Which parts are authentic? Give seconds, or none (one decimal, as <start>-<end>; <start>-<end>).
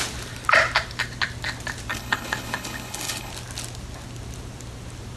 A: 0.0-1.9; 3.3-5.2